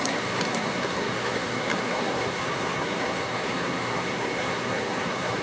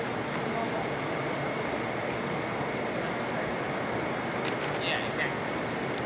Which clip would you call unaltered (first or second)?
second